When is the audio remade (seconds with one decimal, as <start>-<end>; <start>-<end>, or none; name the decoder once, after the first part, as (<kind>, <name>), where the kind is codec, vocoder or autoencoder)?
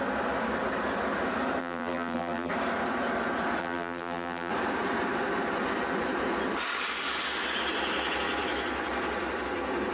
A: 1.6-2.5 (vocoder, BigVGAN v2); 3.6-4.5